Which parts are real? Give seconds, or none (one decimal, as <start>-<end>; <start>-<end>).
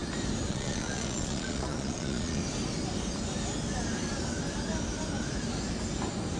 0.0-0.5; 2.4-6.4